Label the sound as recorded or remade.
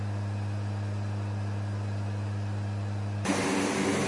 recorded